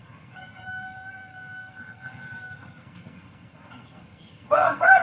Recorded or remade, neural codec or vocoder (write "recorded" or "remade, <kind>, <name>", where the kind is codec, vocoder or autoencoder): remade, codec, SNAC